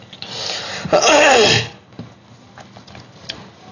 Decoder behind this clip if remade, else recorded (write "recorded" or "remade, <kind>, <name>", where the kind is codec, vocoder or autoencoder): recorded